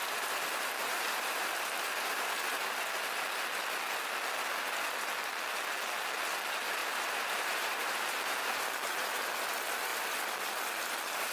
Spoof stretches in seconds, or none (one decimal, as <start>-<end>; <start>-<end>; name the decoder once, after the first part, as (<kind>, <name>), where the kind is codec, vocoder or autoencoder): 0.8-2.5 (vocoder, BigVGAN v2); 6.8-9.2